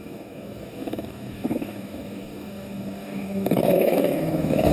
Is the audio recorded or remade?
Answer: remade